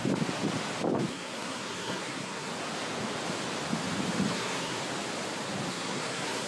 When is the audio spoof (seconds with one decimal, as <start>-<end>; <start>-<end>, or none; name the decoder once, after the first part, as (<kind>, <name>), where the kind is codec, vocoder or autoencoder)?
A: 1.1-2.5 (codec, SNAC); 4.3-4.8; 5.7-6.5